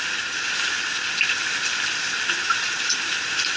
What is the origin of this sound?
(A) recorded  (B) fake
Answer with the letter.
A